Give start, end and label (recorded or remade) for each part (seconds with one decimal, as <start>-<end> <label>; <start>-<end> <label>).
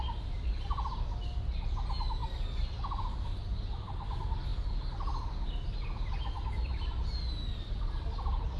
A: 0.0-8.6 recorded